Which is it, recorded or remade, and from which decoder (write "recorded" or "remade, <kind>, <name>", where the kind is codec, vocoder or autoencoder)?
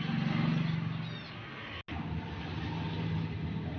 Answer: recorded